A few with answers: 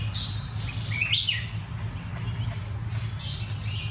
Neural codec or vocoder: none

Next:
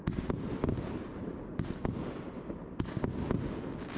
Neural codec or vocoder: none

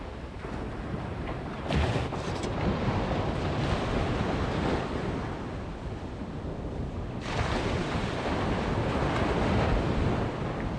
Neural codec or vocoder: none